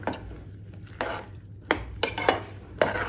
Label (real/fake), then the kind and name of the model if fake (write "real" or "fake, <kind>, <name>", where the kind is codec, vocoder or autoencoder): real